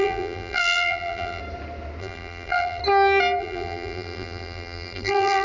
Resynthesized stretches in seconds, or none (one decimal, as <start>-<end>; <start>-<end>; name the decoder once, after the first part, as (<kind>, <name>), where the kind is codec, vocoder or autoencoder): 0.0-1.4 (vocoder, BigVGAN v2); 2.0-2.8; 3.4-5.4